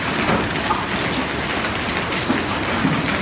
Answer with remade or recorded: recorded